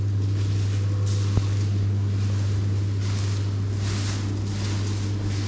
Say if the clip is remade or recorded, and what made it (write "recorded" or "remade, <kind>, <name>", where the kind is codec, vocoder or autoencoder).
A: recorded